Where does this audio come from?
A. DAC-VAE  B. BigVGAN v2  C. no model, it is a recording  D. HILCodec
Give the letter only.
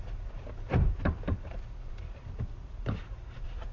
B